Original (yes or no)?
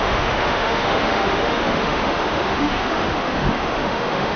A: no